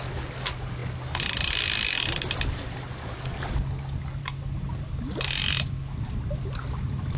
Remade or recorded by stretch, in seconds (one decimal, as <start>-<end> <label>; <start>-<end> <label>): 0.0-7.2 recorded